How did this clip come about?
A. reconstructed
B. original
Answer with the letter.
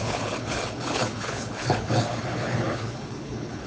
A